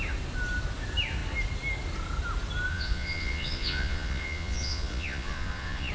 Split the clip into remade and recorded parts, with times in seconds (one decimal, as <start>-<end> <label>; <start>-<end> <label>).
0.0-2.7 recorded; 2.7-5.9 remade